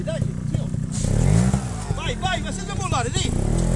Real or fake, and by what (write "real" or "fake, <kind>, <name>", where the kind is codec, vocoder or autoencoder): real